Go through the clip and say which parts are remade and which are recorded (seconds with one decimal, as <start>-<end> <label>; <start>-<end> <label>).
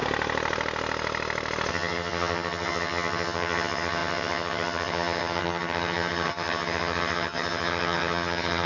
0.0-1.7 recorded; 1.7-8.7 remade